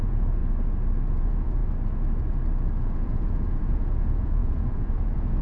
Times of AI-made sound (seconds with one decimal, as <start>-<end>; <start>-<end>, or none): 0.0-0.4; 1.1-1.6; 2.8-5.4